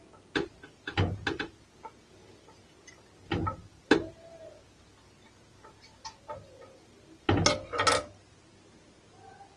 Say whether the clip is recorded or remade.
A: recorded